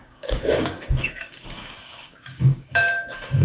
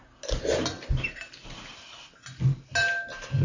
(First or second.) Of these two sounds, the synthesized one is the first